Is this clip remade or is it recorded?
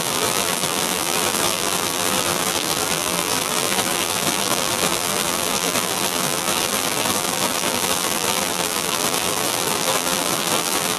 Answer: remade